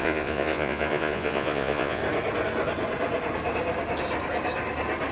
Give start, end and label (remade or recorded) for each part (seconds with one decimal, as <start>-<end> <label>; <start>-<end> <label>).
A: 0.0-2.0 remade; 2.0-5.1 recorded